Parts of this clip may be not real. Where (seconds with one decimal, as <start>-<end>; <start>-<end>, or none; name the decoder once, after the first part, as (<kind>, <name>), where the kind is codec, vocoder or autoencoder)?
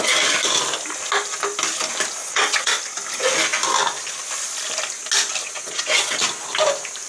2.2-2.7 (vocoder, WaveNeXt); 5.4-6.2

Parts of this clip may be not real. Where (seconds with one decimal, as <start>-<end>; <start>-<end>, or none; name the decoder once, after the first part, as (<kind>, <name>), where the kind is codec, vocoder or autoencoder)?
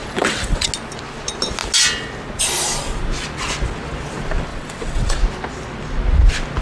0.0-0.7 (vocoder, WaveNeXt); 4.5-5.2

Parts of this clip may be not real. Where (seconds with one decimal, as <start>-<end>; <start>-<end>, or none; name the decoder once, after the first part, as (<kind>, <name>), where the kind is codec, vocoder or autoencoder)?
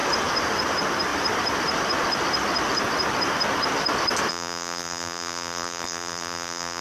4.3-6.8 (vocoder, BigVGAN v2)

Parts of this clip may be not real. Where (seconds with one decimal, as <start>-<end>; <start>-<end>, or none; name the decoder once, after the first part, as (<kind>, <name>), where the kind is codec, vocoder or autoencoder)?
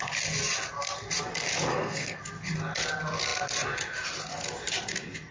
1.7-2.2 (codec, SNAC)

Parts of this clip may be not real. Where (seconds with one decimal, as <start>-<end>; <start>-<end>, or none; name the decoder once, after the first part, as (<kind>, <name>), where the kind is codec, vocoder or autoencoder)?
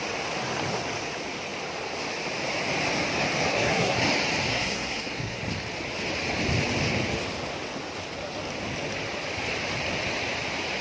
3.5-4.0 (codec, SNAC); 4.5-5.4